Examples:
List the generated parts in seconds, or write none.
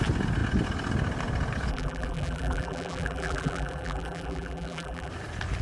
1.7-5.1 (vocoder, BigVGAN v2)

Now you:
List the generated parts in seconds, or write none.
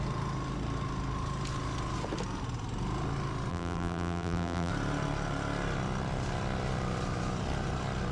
3.5-4.7 (vocoder, BigVGAN v2)